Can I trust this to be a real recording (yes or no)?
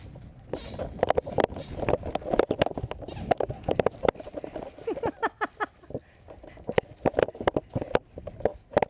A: yes